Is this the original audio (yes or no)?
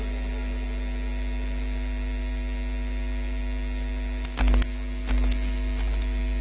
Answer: yes